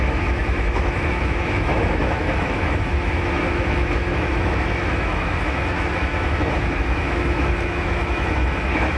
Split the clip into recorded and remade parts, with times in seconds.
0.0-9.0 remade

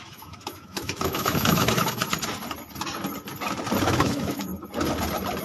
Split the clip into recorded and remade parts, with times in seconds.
0.0-2.0 remade; 2.0-3.8 recorded; 3.8-4.5 remade; 4.5-5.4 recorded

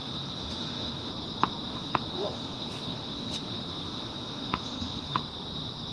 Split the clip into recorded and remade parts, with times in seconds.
0.0-1.1 remade; 1.1-1.7 recorded; 1.7-5.2 remade; 5.2-5.9 recorded